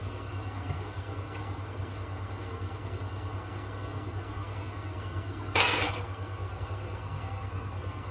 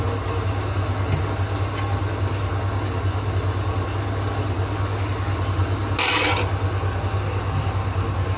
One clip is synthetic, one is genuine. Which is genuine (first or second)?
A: second